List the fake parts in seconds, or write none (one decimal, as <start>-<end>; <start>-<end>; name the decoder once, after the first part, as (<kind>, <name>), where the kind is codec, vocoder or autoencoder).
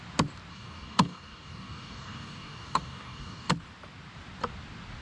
0.5-3.5 (codec, DAC)